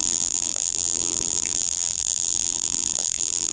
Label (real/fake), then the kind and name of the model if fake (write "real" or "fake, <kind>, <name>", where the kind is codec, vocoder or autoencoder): fake, vocoder, BigVGAN v2